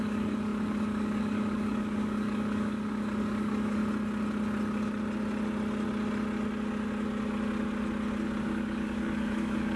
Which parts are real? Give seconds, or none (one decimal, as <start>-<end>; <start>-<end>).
3.8-8.4